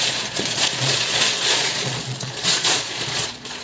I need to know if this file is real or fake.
fake